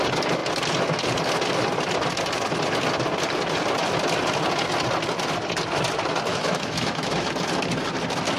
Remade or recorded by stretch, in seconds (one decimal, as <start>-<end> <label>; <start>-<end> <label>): 0.0-6.3 recorded; 6.3-7.3 remade; 7.3-8.4 recorded